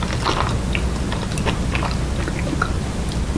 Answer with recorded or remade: recorded